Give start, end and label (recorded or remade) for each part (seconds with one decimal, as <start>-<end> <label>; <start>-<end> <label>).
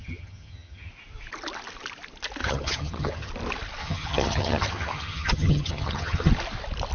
0.0-0.9 remade; 0.9-2.4 recorded; 2.4-3.3 remade; 3.3-3.8 recorded; 3.8-6.3 remade; 6.3-6.9 recorded